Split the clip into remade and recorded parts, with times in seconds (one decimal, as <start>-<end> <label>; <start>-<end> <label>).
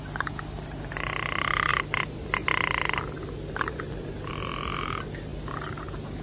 0.0-6.2 recorded